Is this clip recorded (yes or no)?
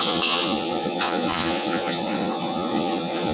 no